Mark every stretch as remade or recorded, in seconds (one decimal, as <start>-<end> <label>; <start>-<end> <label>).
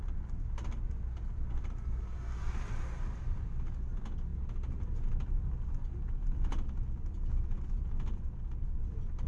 0.0-9.3 recorded